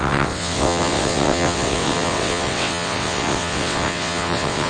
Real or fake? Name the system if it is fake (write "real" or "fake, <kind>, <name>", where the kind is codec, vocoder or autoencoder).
fake, vocoder, WaveNeXt